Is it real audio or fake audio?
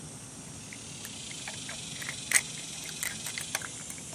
real